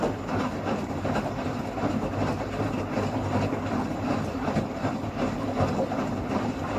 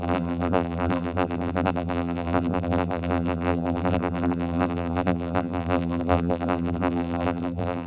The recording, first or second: first